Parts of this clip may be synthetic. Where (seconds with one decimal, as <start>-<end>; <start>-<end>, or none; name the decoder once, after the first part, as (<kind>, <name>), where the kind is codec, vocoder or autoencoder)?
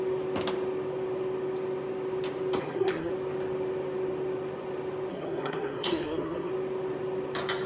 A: 2.6-3.1 (codec, SNAC); 5.1-6.5